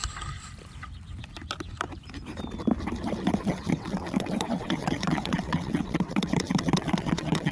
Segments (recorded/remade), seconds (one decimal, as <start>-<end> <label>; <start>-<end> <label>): 0.0-3.4 recorded; 3.4-7.5 remade